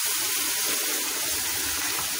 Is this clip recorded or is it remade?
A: recorded